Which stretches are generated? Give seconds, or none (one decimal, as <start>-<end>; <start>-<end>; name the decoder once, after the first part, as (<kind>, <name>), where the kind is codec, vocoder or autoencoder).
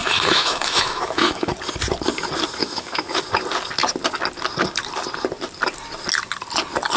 0.0-1.5 (autoencoder, DAC-VAE); 2.6-3.2